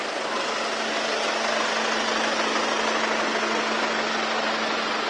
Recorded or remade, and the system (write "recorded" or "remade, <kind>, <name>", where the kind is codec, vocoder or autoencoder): recorded